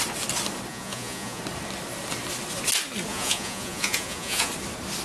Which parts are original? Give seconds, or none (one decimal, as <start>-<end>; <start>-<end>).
0.0-0.7; 1.4-3.1; 4.5-5.0